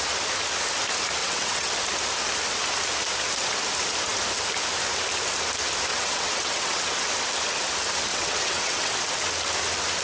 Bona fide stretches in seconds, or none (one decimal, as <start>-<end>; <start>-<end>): 0.0-1.2; 1.7-5.9; 6.8-8.1; 8.9-10.0